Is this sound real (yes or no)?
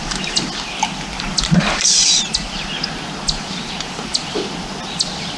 yes